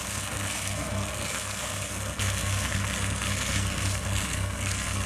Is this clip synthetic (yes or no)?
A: yes